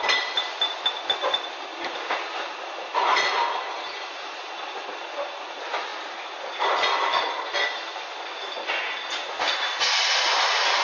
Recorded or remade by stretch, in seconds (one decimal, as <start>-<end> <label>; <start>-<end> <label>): 0.0-10.8 recorded